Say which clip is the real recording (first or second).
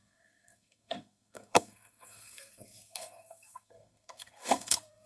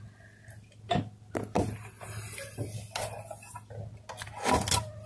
second